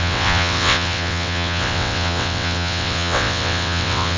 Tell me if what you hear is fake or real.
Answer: fake